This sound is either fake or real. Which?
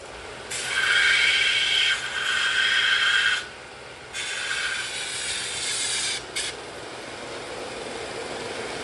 real